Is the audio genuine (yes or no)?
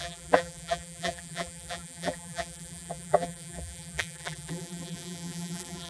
no